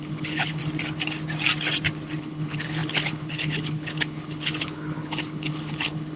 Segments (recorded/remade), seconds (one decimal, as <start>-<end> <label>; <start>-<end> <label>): 0.0-0.6 remade; 0.6-2.2 recorded; 2.2-6.2 remade